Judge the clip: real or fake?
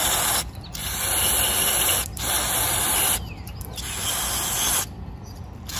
real